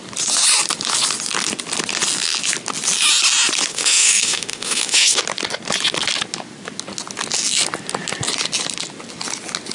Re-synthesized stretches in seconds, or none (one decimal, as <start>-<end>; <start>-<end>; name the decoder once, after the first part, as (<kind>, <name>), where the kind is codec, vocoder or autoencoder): 3.7-5.2 (autoencoder, DAC-VAE)